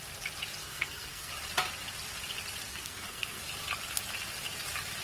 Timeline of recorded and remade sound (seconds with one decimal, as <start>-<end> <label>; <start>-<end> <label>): 0.0-0.6 recorded; 0.6-1.3 remade; 1.3-2.7 recorded; 2.7-3.4 remade; 3.4-5.0 recorded